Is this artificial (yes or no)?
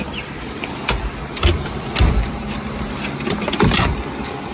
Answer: yes